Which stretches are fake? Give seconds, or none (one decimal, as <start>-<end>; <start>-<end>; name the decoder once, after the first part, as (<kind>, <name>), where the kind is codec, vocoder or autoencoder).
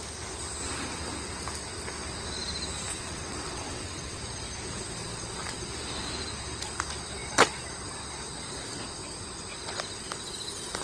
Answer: 2.9-4.2 (vocoder, WaveNeXt)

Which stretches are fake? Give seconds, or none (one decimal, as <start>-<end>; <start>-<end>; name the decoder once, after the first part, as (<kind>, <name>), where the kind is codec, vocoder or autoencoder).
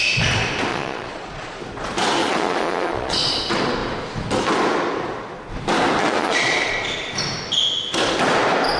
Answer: 0.7-1.6 (vocoder, Vocos); 2.2-3.3; 6.0-6.7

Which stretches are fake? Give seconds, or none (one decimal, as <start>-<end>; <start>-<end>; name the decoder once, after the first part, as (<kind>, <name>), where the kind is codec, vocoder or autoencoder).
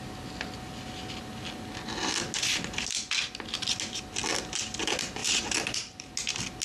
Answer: 5.2-6.1 (vocoder, BigVGAN v2)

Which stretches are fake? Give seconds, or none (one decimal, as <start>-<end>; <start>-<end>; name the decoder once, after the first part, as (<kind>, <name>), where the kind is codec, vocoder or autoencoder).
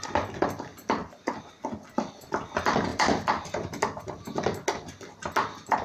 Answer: none